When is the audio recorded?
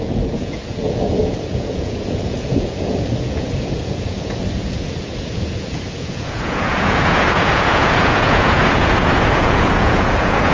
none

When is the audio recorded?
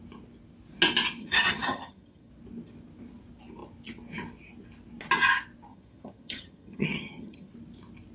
0.0-1.2; 2.3-5.7; 7.5-8.1